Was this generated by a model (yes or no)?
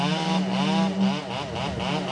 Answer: no